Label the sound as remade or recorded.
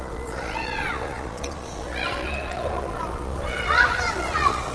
remade